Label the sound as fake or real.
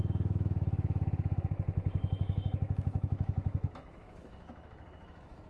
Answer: fake